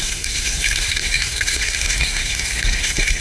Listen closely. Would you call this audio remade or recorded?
remade